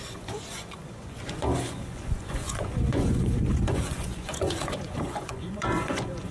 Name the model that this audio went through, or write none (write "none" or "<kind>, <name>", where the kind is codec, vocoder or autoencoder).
vocoder, Vocos